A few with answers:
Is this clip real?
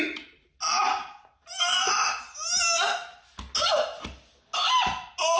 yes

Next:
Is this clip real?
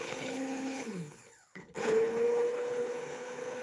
no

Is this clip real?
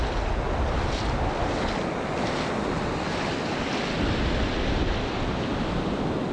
yes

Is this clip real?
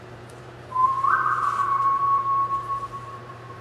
no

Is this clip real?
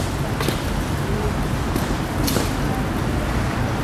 yes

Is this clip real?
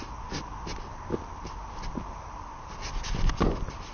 yes